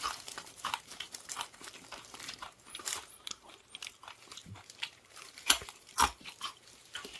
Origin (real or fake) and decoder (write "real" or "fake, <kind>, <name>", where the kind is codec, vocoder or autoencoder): fake, vocoder, BigVGAN v2